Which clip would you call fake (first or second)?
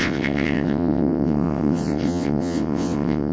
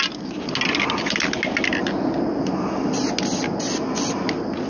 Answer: first